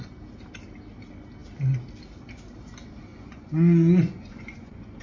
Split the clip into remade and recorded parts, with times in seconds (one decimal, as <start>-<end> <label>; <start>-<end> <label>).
0.0-3.1 recorded; 3.1-5.0 remade